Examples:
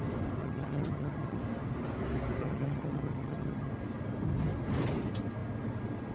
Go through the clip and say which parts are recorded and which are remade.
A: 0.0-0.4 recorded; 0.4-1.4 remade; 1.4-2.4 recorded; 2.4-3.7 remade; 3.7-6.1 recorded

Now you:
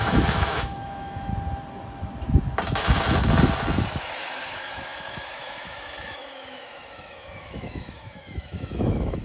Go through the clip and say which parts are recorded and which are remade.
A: 0.0-1.3 remade; 1.3-4.0 recorded; 4.0-9.2 remade

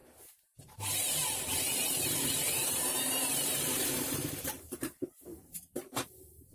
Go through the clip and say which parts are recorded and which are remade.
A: 0.0-6.5 remade

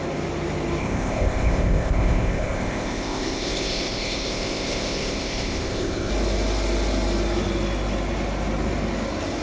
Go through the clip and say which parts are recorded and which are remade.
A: 0.0-0.8 recorded; 0.8-6.1 remade; 6.1-9.4 recorded

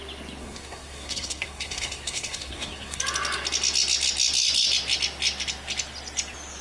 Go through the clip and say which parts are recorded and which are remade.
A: 0.0-0.4 recorded; 0.4-3.0 remade; 3.0-6.6 recorded